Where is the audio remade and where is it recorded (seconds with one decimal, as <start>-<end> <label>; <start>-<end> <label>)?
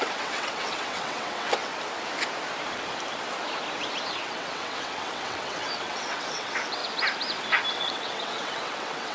0.0-1.7 remade; 1.7-4.1 recorded; 4.1-6.8 remade; 6.8-7.7 recorded; 7.7-9.1 remade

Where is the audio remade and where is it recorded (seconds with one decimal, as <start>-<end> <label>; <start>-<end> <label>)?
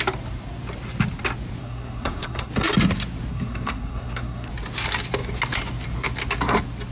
0.0-1.6 recorded; 1.6-2.5 remade; 2.5-3.3 recorded; 3.3-4.5 remade; 4.5-6.9 recorded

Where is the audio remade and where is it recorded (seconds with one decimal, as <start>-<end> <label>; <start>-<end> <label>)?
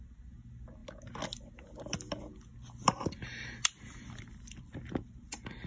0.0-5.7 recorded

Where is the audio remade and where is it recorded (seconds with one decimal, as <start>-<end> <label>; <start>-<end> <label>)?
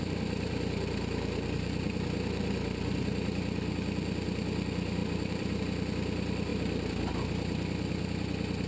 0.0-5.0 recorded; 5.0-5.6 remade; 5.6-6.5 recorded; 6.5-7.1 remade; 7.1-8.7 recorded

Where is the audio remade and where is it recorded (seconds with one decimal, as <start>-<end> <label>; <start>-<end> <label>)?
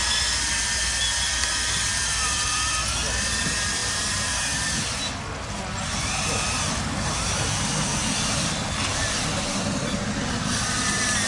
0.0-11.3 recorded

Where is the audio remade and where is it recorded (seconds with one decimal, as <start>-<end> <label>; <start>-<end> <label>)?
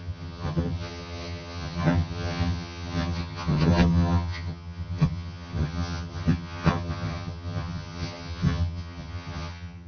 0.0-9.9 remade